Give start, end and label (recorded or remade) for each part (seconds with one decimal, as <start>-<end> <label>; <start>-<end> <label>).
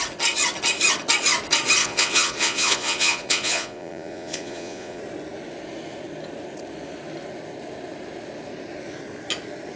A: 0.0-1.8 recorded; 1.8-5.0 remade; 5.0-9.8 recorded